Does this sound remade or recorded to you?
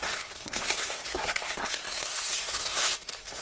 remade